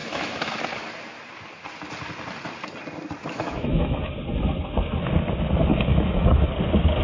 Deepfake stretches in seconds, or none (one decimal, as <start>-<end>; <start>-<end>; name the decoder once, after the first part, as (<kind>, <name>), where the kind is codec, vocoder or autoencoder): 0.0-0.6 (autoencoder, DAC-VAE); 3.2-4.0; 5.7-6.5